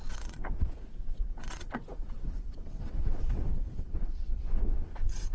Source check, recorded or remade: remade